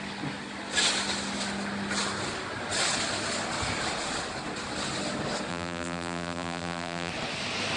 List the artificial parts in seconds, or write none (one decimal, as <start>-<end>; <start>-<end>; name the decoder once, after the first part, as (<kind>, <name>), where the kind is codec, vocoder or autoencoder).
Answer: 5.5-7.1 (vocoder, BigVGAN v2)